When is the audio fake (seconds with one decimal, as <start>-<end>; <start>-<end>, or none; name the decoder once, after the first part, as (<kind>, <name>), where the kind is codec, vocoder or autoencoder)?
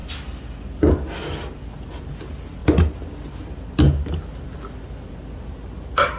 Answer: none